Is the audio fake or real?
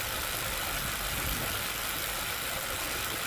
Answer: real